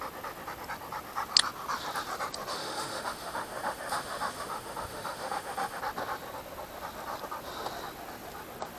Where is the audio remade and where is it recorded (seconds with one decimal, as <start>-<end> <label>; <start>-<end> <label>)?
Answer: 0.0-2.5 recorded; 2.5-5.8 remade; 5.8-8.8 recorded